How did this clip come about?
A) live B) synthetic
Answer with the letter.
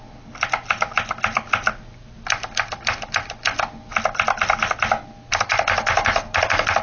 A